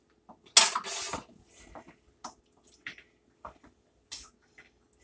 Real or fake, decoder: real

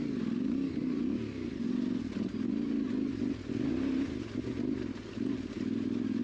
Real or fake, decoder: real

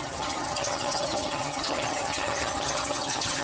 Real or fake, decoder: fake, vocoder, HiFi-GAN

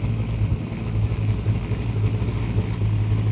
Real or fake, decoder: real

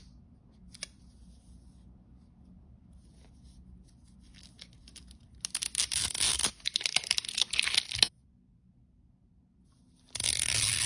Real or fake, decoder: real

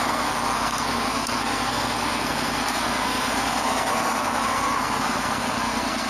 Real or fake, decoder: fake, codec, SNAC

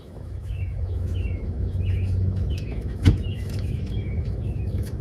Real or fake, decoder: fake, autoencoder, DAC-VAE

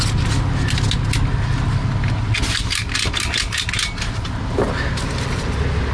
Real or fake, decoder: real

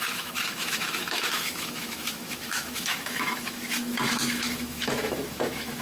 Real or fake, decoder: fake, autoencoder, DAC-VAE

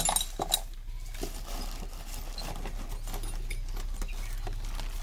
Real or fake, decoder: real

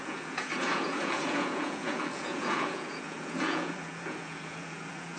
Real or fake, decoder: fake, vocoder, Vocos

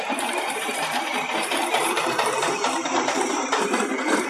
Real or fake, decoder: fake, vocoder, BigVGAN v2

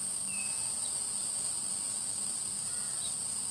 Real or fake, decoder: real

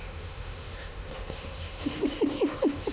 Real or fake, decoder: fake, autoencoder, DAC-VAE